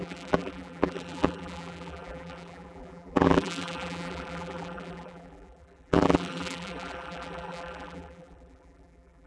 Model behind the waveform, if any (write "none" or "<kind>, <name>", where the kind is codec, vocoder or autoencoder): vocoder, BigVGAN v2